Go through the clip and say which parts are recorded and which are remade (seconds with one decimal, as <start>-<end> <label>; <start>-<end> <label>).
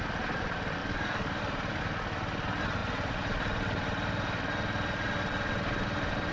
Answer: 0.0-0.8 recorded; 0.8-1.4 remade; 1.4-6.3 recorded